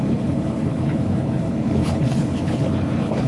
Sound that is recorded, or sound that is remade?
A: remade